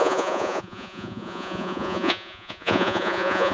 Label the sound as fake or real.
fake